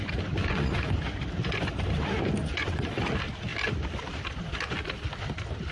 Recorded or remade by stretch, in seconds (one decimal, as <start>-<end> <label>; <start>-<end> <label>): 0.0-0.4 recorded; 0.4-0.9 remade; 0.9-2.4 recorded; 2.4-2.9 remade; 2.9-5.7 recorded